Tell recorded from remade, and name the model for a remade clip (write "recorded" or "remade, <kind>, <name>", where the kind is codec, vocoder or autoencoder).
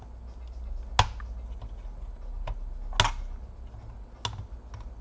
recorded